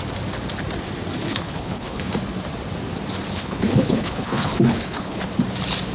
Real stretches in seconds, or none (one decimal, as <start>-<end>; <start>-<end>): 0.0-1.2; 2.1-3.3; 5.3-5.9